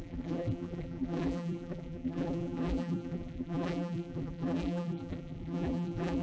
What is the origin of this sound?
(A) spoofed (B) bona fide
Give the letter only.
A